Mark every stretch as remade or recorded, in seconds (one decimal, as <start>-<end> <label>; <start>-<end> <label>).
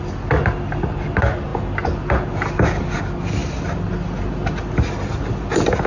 0.0-5.9 recorded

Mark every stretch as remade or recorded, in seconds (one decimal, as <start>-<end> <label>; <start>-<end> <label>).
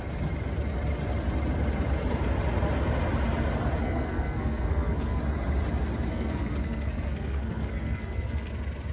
0.0-3.8 recorded; 3.8-5.2 remade; 5.2-6.1 recorded; 6.1-8.5 remade; 8.5-8.9 recorded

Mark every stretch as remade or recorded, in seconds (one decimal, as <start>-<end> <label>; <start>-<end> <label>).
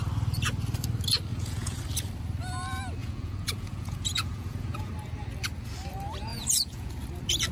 0.0-1.3 recorded; 1.3-1.8 remade; 1.8-3.0 recorded; 3.0-4.9 remade; 4.9-6.3 recorded; 6.3-6.9 remade; 6.9-7.5 recorded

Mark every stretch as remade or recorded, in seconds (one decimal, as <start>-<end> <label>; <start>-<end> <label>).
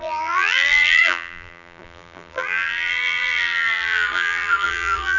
0.0-5.2 remade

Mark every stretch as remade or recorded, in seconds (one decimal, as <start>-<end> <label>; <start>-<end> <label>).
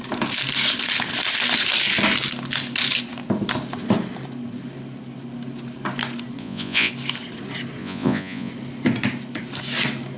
0.0-6.4 recorded; 6.4-6.9 remade; 6.9-7.8 recorded; 7.8-8.5 remade; 8.5-10.2 recorded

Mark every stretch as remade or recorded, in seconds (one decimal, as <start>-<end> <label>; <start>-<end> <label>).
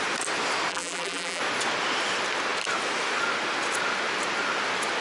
0.0-0.7 recorded; 0.7-1.4 remade; 1.4-5.0 recorded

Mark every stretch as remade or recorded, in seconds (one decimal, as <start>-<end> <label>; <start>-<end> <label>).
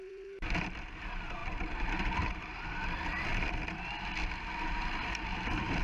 0.0-1.4 remade; 1.4-1.9 recorded; 1.9-5.8 remade